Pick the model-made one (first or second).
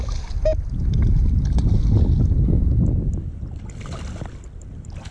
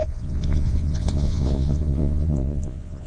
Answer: second